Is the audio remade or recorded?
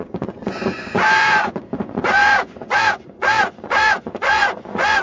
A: remade